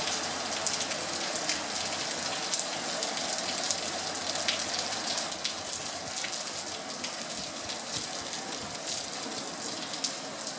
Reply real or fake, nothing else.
real